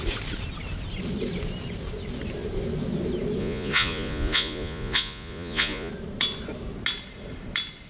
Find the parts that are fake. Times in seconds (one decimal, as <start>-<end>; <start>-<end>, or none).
3.4-5.9